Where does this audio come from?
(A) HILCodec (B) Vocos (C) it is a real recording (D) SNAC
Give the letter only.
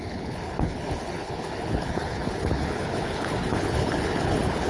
A